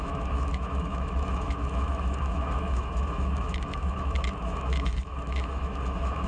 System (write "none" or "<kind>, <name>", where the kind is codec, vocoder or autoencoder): autoencoder, DAC-VAE